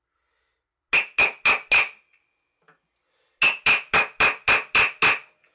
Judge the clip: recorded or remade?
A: recorded